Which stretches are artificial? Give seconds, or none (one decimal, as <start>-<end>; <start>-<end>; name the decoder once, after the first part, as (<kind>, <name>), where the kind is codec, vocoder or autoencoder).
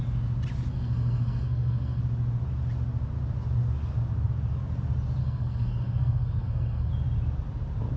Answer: 0.7-2.0 (codec, SNAC); 5.2-6.9